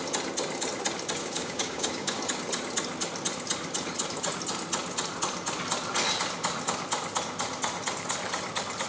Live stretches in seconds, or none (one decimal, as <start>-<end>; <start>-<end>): 0.0-1.2; 2.2-8.9